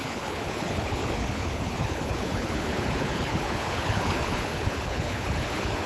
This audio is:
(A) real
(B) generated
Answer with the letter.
B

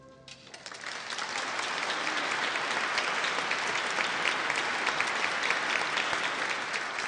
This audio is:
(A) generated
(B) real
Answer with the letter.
B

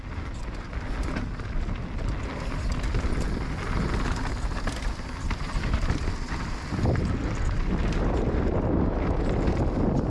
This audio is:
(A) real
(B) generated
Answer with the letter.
A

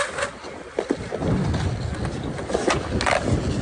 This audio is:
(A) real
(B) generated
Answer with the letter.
A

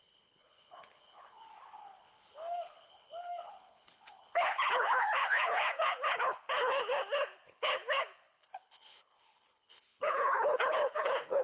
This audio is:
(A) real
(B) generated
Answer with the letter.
B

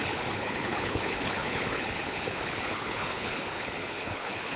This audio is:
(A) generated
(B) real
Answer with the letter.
A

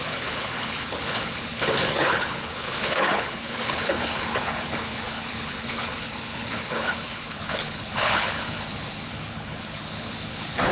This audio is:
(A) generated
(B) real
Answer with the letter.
A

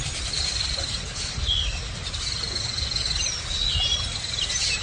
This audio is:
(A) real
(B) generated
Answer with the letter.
A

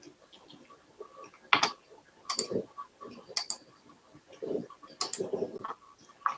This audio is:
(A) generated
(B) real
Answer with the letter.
B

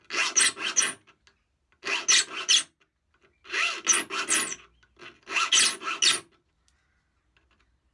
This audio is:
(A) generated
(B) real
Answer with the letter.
B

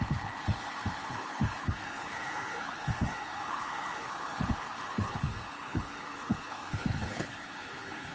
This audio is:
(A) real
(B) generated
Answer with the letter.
B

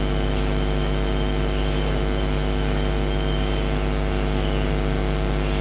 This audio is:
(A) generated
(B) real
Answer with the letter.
B